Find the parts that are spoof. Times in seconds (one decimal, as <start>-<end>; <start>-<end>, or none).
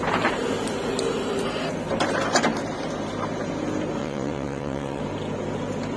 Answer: 4.0-5.0